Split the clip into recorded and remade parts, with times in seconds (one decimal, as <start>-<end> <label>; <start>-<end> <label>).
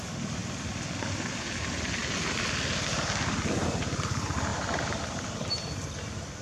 0.0-2.0 recorded; 2.0-3.0 remade; 3.0-4.5 recorded; 4.5-5.6 remade; 5.6-6.4 recorded